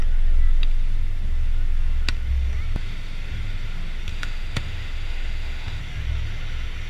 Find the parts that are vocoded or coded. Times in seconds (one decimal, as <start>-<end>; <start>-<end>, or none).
4.1-5.8